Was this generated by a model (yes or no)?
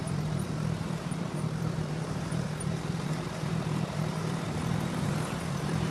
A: yes